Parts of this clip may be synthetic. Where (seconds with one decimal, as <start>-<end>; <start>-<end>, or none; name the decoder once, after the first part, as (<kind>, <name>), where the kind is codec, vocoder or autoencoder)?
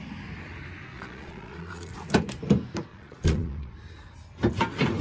0.9-1.9 (vocoder, Vocos); 2.9-3.7